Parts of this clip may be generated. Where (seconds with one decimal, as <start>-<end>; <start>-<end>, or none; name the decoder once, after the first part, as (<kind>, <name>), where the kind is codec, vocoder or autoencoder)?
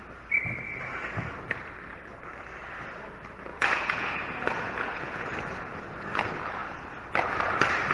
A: 3.5-5.8 (vocoder, Vocos)